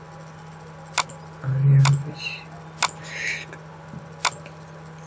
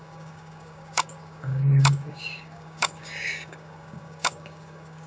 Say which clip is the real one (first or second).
first